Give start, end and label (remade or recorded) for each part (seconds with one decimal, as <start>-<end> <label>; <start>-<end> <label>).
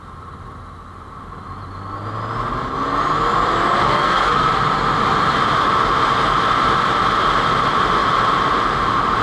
0.0-3.9 recorded; 3.9-4.5 remade; 4.5-9.2 recorded